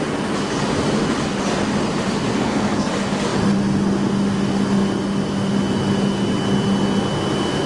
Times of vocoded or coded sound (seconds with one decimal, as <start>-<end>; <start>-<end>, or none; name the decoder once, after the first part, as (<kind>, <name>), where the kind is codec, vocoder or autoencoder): 2.3-2.9 (codec, SNAC)